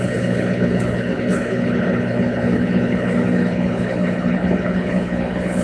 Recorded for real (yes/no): no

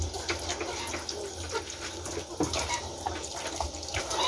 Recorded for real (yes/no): yes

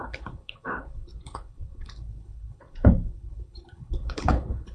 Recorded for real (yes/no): no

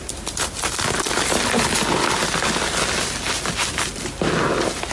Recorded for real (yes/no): yes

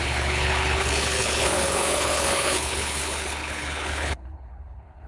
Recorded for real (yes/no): no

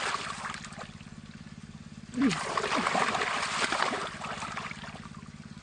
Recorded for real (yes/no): yes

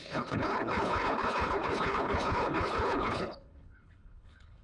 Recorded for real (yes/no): no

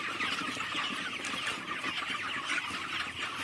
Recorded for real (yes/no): yes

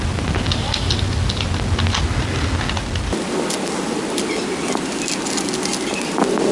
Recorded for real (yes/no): yes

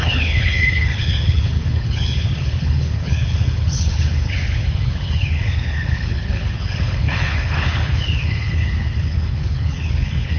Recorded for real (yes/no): no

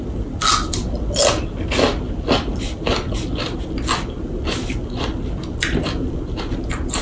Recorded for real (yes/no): yes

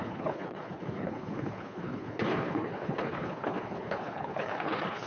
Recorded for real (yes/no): no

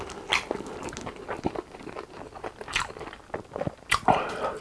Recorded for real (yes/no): yes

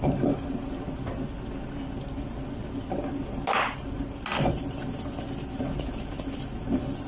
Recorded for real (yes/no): yes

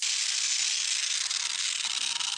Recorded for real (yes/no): yes